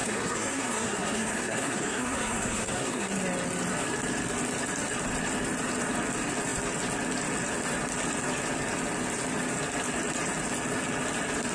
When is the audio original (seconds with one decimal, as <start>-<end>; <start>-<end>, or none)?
3.1-11.5